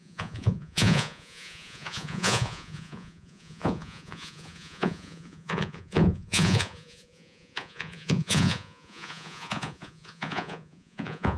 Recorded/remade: remade